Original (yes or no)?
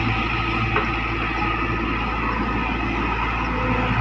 yes